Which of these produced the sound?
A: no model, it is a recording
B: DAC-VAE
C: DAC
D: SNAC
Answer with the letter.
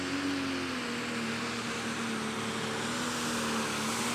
A